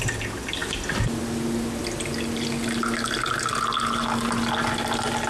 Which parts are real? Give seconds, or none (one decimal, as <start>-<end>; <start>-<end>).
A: 0.0-5.3